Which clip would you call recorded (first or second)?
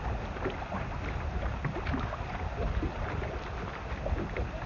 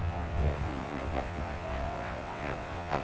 first